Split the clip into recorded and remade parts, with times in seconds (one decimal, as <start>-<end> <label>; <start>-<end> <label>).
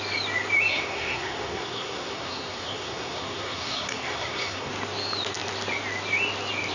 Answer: 0.0-0.7 recorded; 0.7-4.7 remade; 4.7-6.7 recorded